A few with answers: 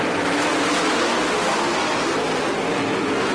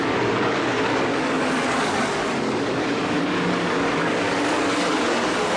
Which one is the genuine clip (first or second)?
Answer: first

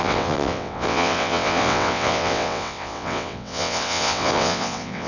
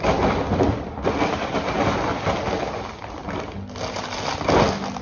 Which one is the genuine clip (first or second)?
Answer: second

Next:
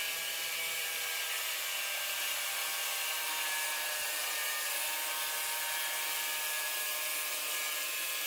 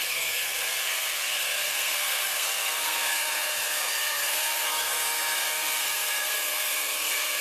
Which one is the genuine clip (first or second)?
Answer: first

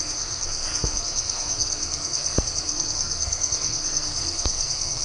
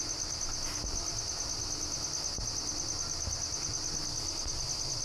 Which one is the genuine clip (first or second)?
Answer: second